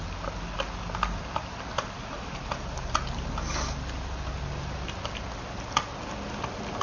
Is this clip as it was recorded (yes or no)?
yes